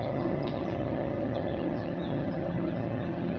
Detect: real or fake fake